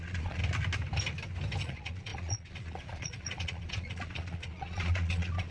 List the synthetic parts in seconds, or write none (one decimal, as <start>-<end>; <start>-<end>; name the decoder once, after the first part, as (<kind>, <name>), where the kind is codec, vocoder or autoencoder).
0.0-0.4 (vocoder, Vocos); 1.6-5.5